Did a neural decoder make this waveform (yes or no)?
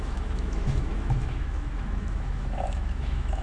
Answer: yes